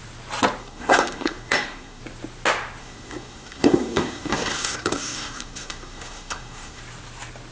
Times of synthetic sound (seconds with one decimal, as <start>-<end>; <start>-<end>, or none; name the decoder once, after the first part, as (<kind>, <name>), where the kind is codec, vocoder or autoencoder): 0.6-2.0 (codec, SNAC); 2.8-6.8